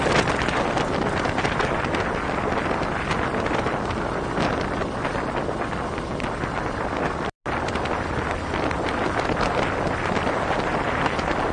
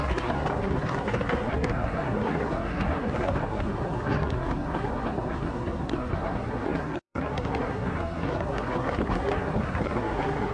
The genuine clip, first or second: first